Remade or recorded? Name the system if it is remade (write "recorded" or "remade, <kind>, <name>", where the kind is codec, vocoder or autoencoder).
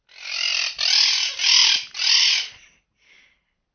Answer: recorded